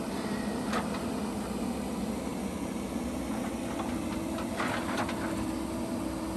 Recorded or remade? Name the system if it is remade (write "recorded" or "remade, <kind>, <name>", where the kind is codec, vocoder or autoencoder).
recorded